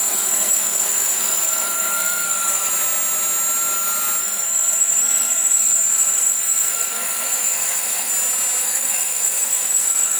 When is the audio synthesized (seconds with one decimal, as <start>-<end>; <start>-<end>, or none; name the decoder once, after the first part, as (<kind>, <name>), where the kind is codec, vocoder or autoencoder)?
0.0-2.7 (codec, SNAC); 4.2-8.1; 8.6-10.2